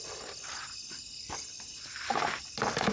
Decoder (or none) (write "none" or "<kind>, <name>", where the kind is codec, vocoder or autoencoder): none